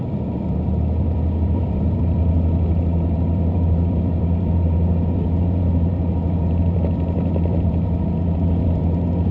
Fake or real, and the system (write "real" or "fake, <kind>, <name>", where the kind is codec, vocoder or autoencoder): fake, vocoder, BigVGAN v2